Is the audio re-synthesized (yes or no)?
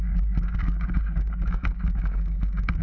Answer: yes